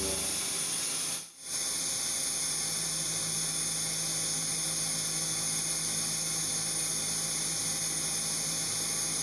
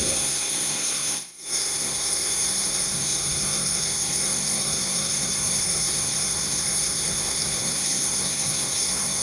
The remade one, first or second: second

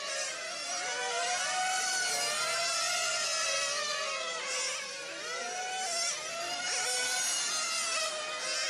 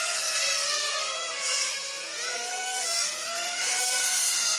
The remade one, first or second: second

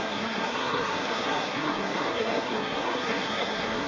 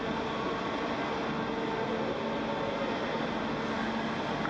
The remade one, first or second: first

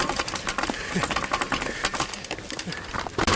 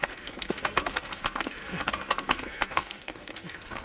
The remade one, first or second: second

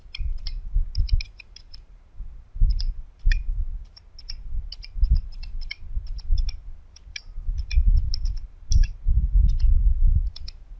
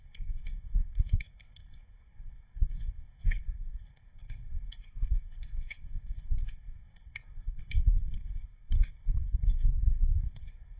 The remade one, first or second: second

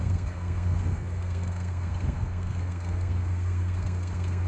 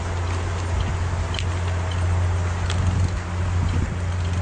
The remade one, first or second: first